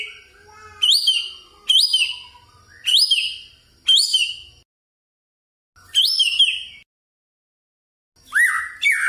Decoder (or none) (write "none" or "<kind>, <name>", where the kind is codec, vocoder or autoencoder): none